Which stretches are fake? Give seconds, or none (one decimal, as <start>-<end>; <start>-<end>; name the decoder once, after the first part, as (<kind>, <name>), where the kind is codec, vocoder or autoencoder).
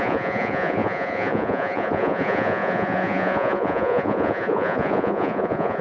0.0-5.8 (vocoder, Vocos)